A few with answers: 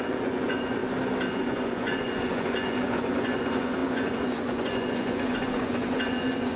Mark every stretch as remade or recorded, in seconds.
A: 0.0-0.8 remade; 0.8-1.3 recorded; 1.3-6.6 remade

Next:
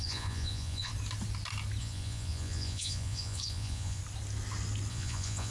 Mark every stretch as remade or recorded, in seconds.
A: 0.0-0.9 remade; 0.9-1.8 recorded; 1.8-4.0 remade; 4.0-4.9 recorded; 4.9-5.5 remade